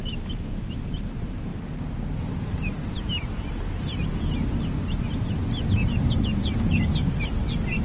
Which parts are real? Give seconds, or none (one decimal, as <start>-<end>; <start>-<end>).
1.5-6.2